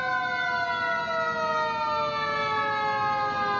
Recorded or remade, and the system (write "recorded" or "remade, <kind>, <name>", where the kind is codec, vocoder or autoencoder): recorded